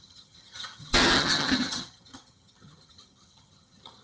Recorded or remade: remade